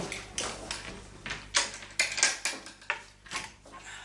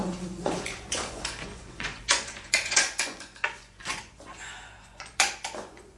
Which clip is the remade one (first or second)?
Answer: second